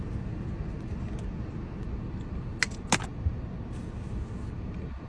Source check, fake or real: real